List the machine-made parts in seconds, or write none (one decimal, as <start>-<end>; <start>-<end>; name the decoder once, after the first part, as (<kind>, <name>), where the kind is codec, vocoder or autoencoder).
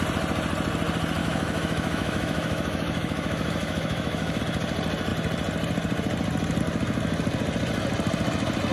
1.2-4.4 (autoencoder, DAC-VAE)